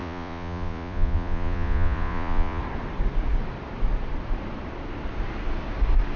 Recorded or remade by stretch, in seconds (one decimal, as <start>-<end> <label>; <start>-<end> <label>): 0.0-2.6 remade; 2.6-6.2 recorded